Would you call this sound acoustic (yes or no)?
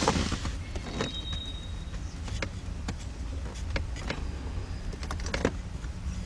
yes